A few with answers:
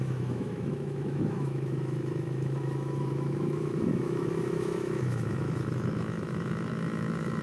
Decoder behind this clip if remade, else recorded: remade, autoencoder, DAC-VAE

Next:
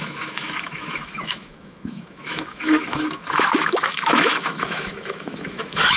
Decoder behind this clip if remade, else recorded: remade, autoencoder, DAC-VAE